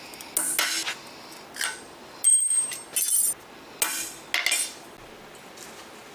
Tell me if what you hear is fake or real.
real